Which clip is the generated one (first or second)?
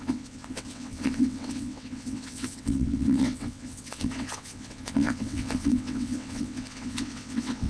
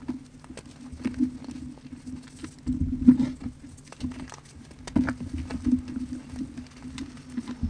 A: first